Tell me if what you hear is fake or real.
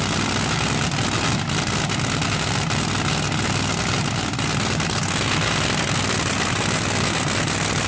real